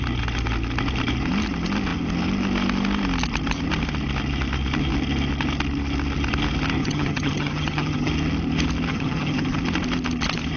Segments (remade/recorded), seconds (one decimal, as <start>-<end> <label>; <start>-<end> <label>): 0.0-6.8 recorded; 6.8-8.1 remade; 8.1-8.9 recorded; 8.9-9.6 remade; 9.6-10.6 recorded